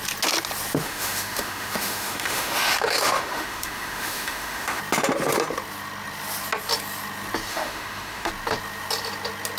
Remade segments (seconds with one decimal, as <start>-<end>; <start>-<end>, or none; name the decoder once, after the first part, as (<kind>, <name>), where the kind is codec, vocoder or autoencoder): 0.8-4.8 (autoencoder, DAC-VAE); 7.5-8.3